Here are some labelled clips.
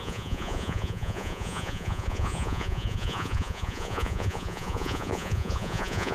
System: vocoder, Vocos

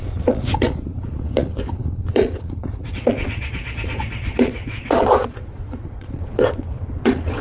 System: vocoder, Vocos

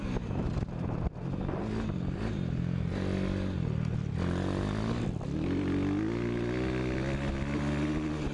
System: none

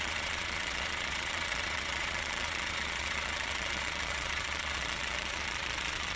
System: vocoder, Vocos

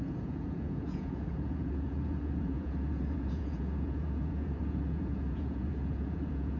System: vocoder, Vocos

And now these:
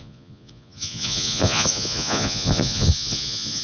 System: vocoder, Vocos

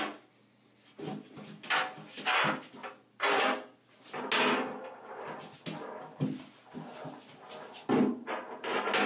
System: none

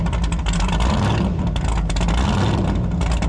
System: none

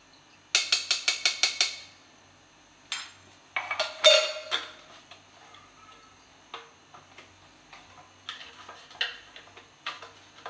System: none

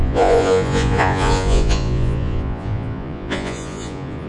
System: vocoder, Vocos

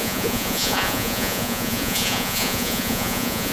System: vocoder, Vocos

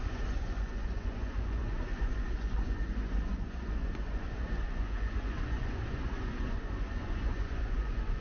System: vocoder, Vocos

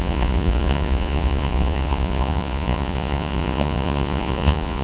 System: vocoder, Vocos